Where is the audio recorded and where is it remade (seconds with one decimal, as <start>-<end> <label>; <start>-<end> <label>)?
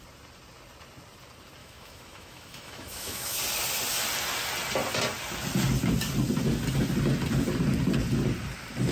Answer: 0.0-1.6 recorded; 1.6-3.4 remade; 3.4-8.9 recorded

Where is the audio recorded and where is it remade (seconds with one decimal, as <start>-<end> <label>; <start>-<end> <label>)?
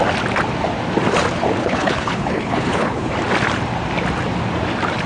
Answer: 0.0-1.6 recorded; 1.6-3.1 remade; 3.1-5.1 recorded